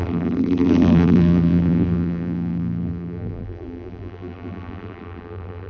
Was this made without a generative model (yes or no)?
no